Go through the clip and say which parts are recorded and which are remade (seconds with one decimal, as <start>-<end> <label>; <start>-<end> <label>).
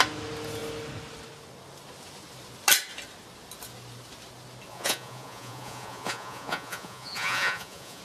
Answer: 0.0-4.7 recorded; 4.7-8.0 remade